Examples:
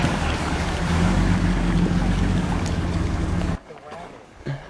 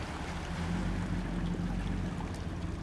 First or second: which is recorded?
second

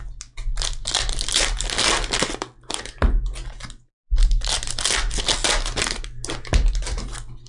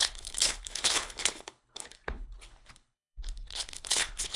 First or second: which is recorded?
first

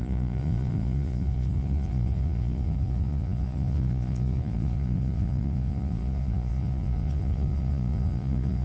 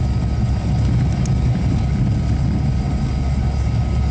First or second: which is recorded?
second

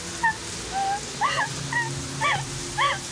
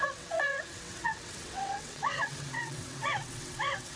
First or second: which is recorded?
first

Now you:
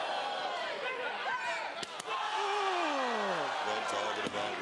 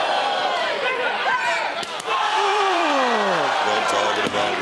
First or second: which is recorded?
first